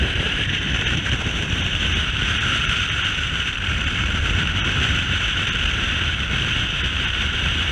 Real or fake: fake